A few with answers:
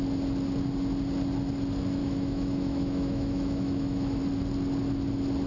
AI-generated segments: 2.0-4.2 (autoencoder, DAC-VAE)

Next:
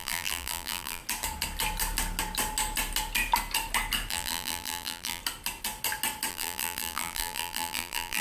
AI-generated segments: 0.0-1.0 (vocoder, BigVGAN v2); 4.1-5.2; 6.3-8.2